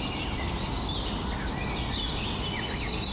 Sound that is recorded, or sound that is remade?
recorded